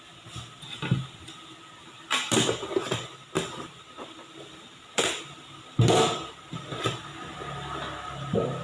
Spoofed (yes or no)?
no